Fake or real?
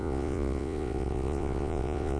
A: fake